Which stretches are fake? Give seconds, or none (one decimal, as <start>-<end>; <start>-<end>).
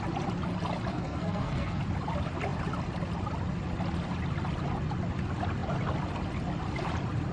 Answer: 0.9-1.8